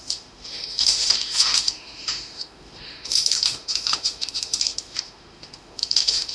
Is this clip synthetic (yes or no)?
yes